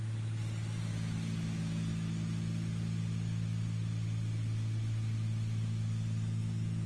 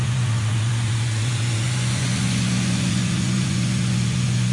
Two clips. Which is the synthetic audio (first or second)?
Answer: second